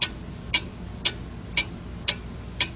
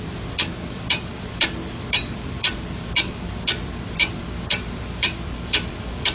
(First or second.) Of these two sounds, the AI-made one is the second